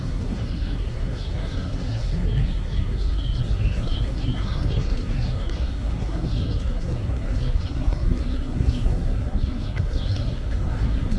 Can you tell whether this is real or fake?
fake